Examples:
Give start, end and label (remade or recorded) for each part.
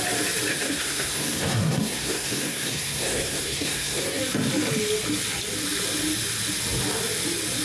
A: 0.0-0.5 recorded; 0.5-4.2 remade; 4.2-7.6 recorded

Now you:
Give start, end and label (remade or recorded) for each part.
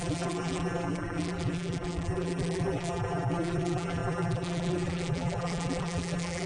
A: 0.0-6.5 remade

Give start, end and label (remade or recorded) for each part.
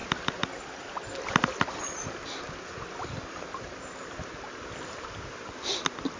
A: 0.0-6.2 recorded